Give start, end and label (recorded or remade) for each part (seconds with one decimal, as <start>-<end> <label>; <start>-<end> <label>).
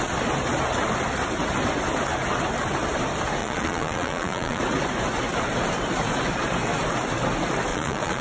0.0-3.4 recorded; 3.4-4.6 remade; 4.6-7.7 recorded; 7.7-8.2 remade